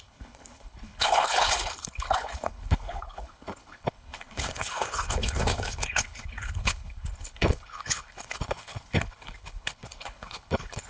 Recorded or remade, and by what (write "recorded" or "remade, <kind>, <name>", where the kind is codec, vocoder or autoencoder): remade, codec, HILCodec